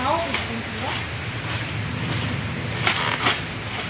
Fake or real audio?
real